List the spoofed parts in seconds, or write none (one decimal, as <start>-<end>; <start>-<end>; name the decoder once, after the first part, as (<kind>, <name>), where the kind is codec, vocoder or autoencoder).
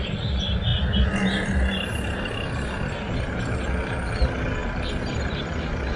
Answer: none